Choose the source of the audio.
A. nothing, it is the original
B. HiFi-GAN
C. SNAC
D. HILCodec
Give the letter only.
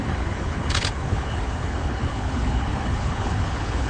D